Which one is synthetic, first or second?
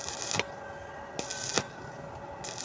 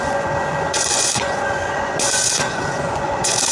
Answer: second